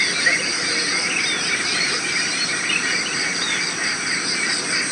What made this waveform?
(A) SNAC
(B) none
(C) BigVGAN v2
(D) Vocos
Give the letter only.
C